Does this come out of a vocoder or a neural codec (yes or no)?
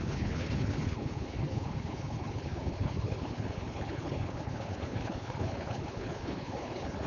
yes